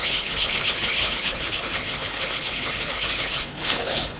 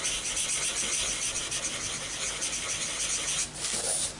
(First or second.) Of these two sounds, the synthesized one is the first